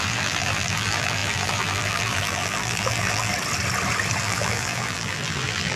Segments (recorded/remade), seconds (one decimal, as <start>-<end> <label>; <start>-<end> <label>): 0.0-3.3 remade; 3.3-4.2 recorded; 4.2-5.8 remade